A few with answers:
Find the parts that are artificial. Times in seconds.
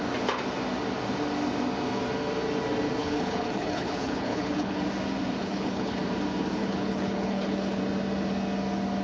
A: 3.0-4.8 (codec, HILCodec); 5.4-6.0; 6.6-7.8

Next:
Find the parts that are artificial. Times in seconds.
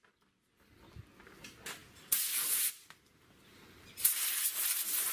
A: none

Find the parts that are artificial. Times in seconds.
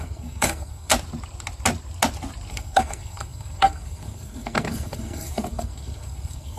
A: 0.0-0.9 (codec, SNAC); 2.5-6.6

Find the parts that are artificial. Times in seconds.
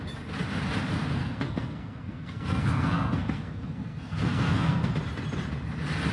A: 1.2-4.9 (codec, SNAC)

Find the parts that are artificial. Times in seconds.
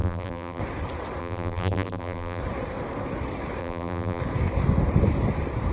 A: 0.0-0.6 (vocoder, BigVGAN v2); 1.2-2.4; 3.6-4.2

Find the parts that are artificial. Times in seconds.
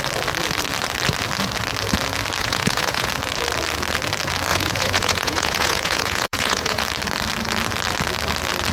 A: 2.4-3.1 (vocoder, Vocos); 4.5-6.8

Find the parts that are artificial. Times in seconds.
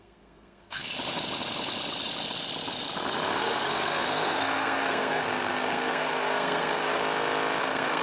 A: 0.0-0.8 (codec, SNAC); 3.4-7.0; 7.6-8.0